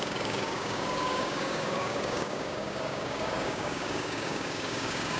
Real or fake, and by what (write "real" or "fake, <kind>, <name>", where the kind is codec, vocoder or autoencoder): fake, codec, DAC